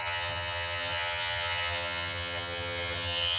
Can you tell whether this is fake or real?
fake